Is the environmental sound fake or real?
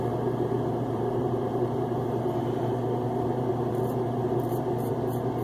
fake